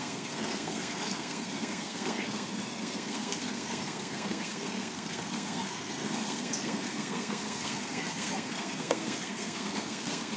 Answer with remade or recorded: remade